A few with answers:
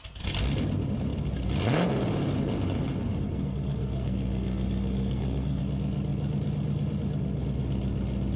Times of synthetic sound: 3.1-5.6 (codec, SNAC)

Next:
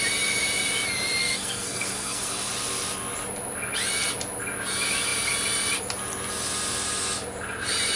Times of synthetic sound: 1.2-2.5 (codec, SNAC)